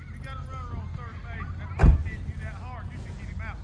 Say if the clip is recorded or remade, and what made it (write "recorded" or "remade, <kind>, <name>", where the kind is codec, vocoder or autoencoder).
recorded